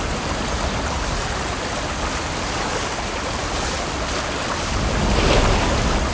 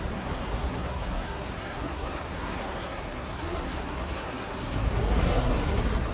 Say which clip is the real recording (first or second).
first